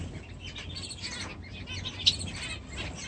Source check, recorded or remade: recorded